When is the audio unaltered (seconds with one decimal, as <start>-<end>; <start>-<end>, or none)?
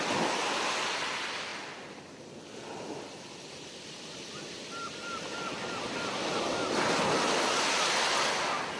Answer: 0.0-8.8